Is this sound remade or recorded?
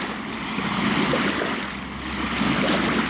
recorded